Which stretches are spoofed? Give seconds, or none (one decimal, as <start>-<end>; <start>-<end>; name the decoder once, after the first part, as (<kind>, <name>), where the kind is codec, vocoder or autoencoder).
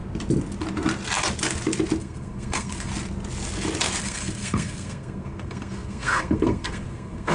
2.0-2.9 (codec, SNAC); 4.0-7.3